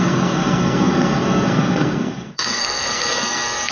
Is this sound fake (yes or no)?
yes